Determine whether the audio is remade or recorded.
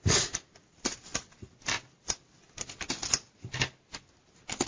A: recorded